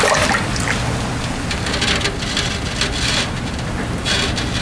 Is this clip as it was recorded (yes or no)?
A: yes